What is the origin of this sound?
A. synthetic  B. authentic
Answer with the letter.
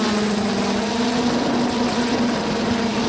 B